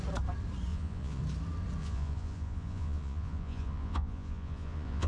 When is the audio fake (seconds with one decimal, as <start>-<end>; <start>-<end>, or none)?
0.7-1.2; 1.8-5.1